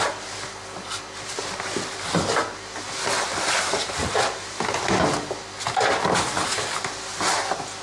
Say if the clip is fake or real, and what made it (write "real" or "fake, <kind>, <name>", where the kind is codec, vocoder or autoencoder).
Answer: real